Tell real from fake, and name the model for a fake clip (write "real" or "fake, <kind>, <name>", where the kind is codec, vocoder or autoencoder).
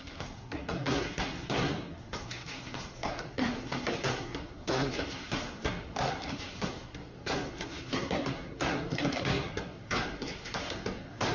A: fake, codec, SNAC